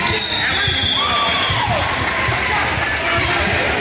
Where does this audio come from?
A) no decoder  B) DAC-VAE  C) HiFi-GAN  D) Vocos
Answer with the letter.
A